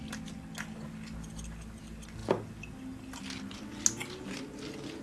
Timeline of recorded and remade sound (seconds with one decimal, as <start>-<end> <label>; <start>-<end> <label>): 0.0-5.0 recorded